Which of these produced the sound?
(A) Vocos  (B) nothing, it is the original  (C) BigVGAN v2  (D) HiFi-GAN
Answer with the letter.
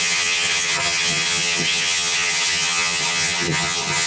D